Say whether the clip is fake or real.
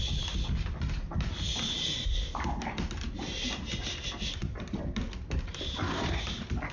real